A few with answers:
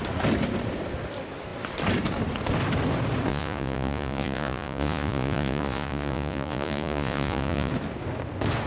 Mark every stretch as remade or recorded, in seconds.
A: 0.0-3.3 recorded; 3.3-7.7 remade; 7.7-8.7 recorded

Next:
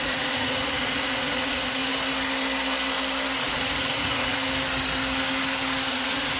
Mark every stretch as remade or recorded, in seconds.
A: 0.0-1.8 remade; 1.8-3.4 recorded; 3.4-4.4 remade; 4.4-5.9 recorded; 5.9-6.4 remade

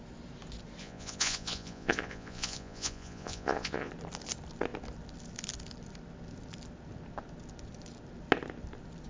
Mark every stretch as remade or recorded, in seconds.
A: 0.0-0.8 recorded; 0.8-3.9 remade; 3.9-9.1 recorded

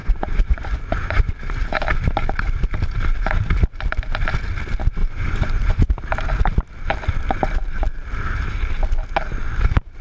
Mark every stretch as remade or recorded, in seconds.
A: 0.0-1.3 remade; 1.3-5.0 recorded; 5.0-5.9 remade; 5.9-10.0 recorded

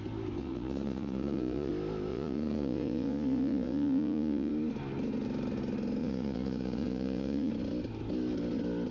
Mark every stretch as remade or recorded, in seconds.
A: 0.0-0.4 recorded; 0.4-1.7 remade; 1.7-2.1 recorded; 2.1-4.5 remade; 4.5-6.0 recorded; 6.0-7.5 remade; 7.5-8.9 recorded